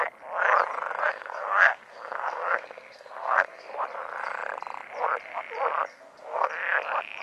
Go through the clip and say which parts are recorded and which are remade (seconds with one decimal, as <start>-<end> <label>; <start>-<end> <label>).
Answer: 0.0-1.1 recorded; 1.1-3.7 remade; 3.7-5.9 recorded; 5.9-6.5 remade; 6.5-7.2 recorded